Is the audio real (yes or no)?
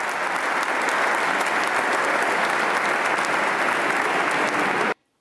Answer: yes